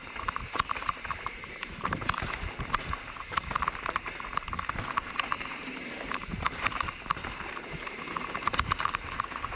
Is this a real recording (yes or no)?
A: no